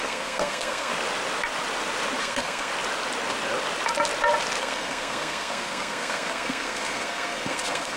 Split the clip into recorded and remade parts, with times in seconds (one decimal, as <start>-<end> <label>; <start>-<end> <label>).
0.0-0.9 remade; 0.9-2.2 recorded; 2.2-2.7 remade; 2.7-4.6 recorded; 4.6-8.0 remade